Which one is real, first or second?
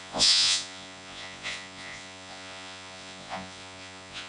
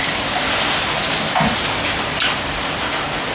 second